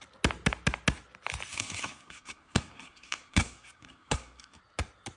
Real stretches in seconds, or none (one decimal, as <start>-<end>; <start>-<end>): 0.0-1.5; 4.6-5.2